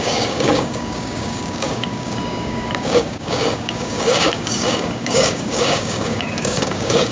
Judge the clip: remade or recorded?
remade